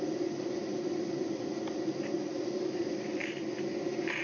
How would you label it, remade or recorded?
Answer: recorded